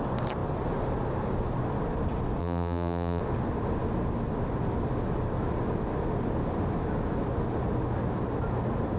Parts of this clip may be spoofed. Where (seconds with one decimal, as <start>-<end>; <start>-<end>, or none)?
2.4-3.2